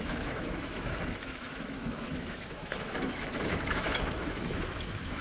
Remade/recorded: remade